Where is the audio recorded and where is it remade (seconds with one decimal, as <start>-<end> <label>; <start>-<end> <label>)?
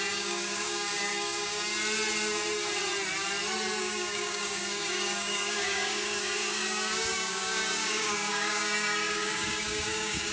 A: 0.0-1.7 remade; 1.7-3.8 recorded; 3.8-10.3 remade